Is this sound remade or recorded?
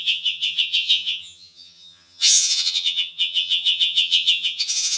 remade